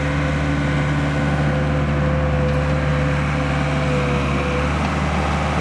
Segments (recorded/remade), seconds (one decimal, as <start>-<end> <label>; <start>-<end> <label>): 0.0-5.6 recorded